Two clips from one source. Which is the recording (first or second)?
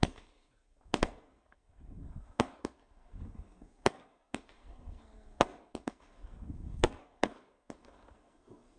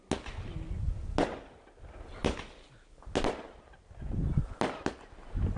second